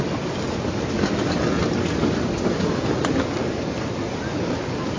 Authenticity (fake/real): real